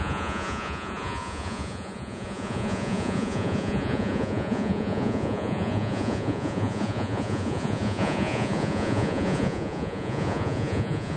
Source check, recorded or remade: remade